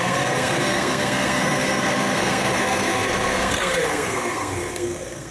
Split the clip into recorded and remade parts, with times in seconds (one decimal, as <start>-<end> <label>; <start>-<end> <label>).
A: 0.0-5.3 remade